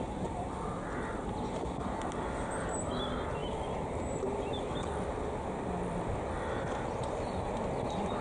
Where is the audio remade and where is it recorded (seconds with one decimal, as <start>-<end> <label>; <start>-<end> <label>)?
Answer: 0.0-8.2 recorded